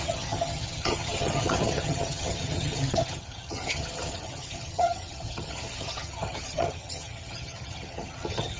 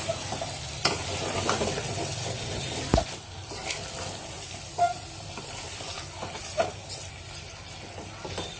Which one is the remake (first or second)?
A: first